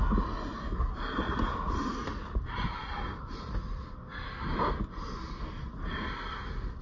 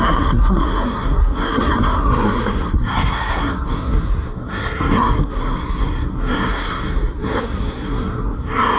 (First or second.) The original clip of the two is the first